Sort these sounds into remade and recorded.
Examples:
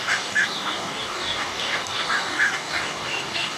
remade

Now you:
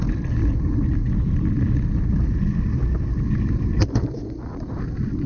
recorded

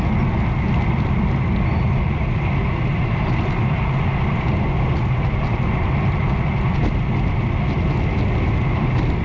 recorded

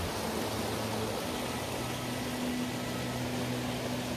recorded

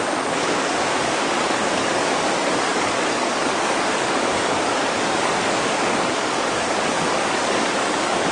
remade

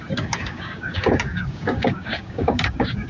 remade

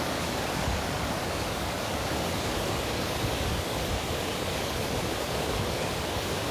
remade